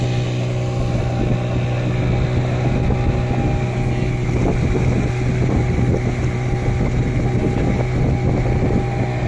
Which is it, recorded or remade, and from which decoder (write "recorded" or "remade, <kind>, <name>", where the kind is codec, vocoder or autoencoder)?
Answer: recorded